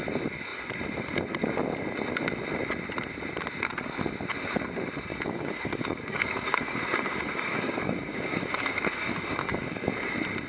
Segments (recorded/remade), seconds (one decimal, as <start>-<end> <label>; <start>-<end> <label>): 0.0-5.1 recorded; 5.1-9.9 remade; 9.9-10.5 recorded